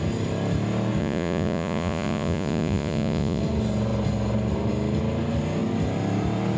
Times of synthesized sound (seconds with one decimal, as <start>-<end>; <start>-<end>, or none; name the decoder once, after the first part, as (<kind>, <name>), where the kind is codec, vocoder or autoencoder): 1.0-3.4 (vocoder, Vocos)